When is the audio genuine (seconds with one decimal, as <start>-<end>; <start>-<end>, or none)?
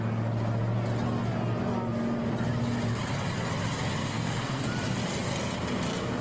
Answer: 0.0-4.0; 4.6-6.2